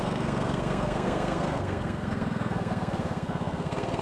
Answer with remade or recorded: remade